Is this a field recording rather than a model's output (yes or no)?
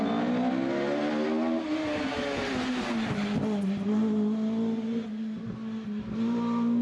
yes